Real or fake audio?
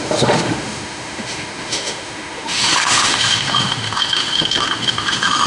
fake